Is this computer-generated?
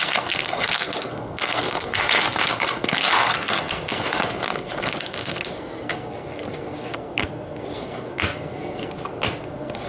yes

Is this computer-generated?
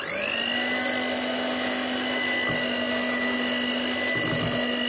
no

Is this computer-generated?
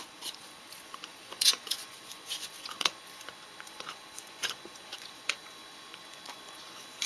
yes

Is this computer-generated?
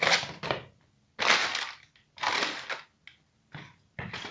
no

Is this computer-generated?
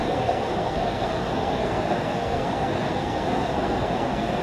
yes